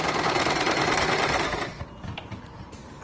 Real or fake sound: real